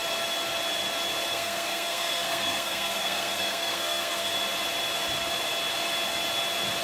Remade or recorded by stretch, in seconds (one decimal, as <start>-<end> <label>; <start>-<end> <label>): 0.0-1.3 recorded; 1.3-4.3 remade; 4.3-6.8 recorded